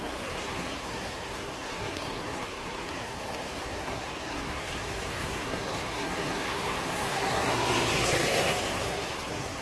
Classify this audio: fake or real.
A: fake